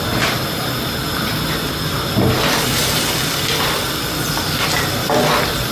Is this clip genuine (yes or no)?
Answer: yes